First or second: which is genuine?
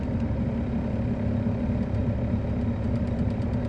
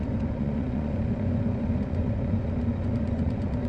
first